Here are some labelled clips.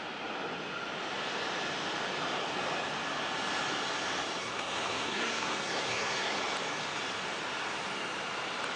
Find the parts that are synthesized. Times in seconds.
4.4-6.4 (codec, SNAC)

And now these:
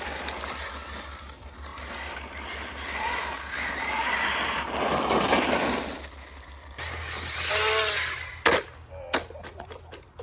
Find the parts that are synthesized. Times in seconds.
none

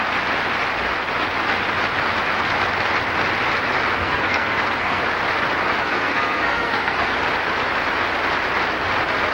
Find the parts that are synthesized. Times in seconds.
4.0-5.0 (codec, SNAC); 5.8-7.2

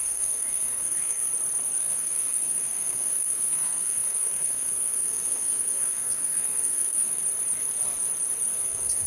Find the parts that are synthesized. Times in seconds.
0.0-1.3 (codec, SNAC); 1.8-7.2; 8.5-9.1

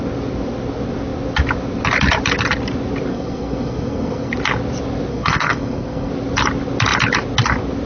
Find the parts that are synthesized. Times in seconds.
3.1-4.3 (codec, SNAC); 5.1-6.1

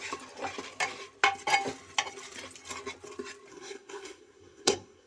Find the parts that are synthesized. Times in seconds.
3.5-5.1 (codec, SNAC)

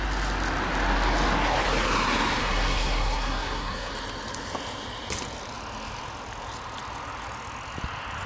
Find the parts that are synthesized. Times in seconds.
2.4-3.9 (codec, SNAC)